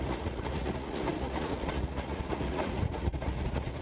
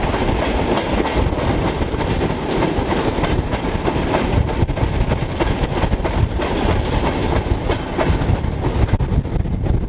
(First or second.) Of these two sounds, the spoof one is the first